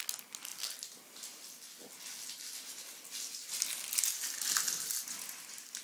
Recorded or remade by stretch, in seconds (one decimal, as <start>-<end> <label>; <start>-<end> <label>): 0.0-5.8 recorded